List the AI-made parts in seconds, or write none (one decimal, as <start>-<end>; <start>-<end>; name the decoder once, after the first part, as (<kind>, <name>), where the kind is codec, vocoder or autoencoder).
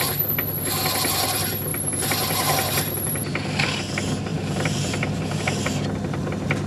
1.7-3.8 (vocoder, BigVGAN v2); 4.3-5.4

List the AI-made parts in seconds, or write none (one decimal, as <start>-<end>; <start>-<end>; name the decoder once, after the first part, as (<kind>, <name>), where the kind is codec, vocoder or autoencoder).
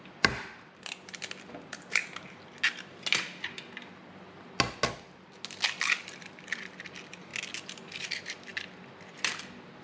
0.0-2.0 (vocoder, BigVGAN v2); 6.0-7.3; 8.0-9.8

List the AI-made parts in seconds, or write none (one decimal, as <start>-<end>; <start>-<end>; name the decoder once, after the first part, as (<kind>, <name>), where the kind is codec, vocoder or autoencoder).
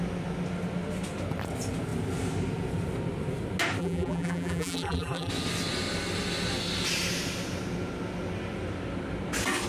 3.8-5.3 (vocoder, BigVGAN v2)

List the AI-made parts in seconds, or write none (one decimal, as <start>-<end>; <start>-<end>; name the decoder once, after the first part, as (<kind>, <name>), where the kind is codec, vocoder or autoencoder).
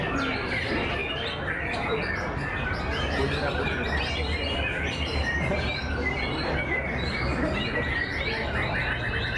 none